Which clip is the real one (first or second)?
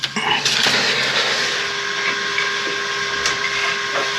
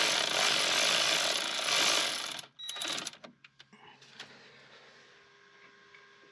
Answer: second